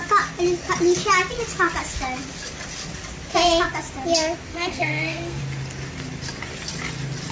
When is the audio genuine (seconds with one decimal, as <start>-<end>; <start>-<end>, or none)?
0.0-4.5; 5.4-7.3